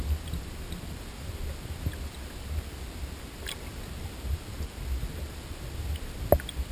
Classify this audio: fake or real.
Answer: real